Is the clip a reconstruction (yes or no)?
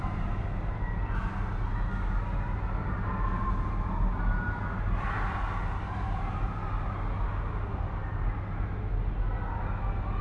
no